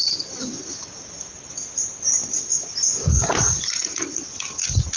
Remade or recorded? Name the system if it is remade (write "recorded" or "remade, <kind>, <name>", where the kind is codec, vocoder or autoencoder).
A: recorded